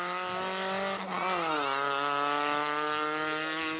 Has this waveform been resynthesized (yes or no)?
no